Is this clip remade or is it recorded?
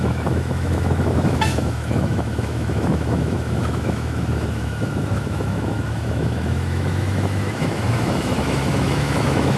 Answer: remade